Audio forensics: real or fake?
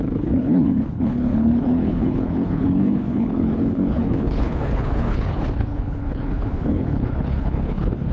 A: fake